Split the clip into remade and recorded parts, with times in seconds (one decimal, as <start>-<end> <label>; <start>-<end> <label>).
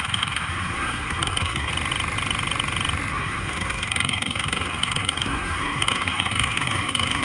0.0-1.7 remade; 1.7-3.1 recorded; 3.1-7.2 remade